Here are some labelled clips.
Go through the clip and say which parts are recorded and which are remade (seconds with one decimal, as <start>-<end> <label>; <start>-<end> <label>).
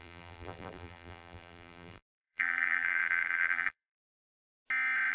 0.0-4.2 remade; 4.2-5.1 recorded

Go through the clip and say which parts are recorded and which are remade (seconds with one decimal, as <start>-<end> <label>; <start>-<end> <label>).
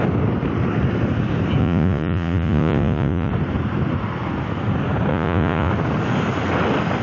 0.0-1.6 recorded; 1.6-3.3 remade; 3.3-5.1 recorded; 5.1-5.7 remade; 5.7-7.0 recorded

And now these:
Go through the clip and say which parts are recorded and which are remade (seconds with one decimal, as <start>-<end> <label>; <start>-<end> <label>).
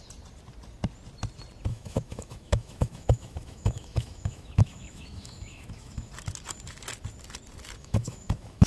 0.0-1.7 recorded; 1.7-6.1 remade; 6.1-7.8 recorded; 7.8-8.7 remade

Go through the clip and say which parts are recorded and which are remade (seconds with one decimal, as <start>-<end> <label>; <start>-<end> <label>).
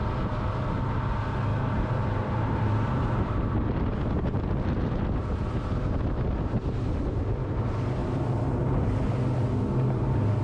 0.0-1.5 recorded; 1.5-3.6 remade; 3.6-8.0 recorded; 8.0-8.7 remade; 8.7-10.4 recorded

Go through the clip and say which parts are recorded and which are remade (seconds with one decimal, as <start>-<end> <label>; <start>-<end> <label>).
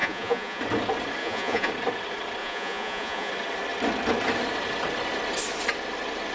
0.0-0.6 remade; 0.6-1.2 recorded; 1.2-1.7 remade; 1.7-2.4 recorded; 2.4-3.3 remade; 3.3-6.3 recorded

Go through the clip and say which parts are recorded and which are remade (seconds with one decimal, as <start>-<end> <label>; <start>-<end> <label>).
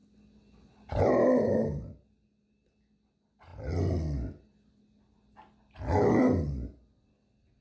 0.0-7.6 recorded